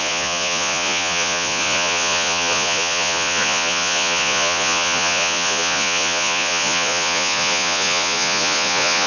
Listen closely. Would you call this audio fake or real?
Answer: fake